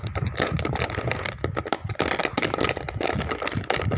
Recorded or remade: remade